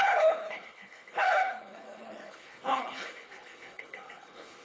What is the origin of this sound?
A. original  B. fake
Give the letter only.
B